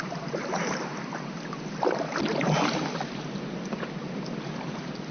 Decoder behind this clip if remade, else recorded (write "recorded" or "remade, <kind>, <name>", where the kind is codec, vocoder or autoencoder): recorded